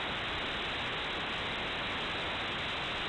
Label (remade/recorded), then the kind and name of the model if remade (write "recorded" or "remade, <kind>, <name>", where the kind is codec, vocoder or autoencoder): recorded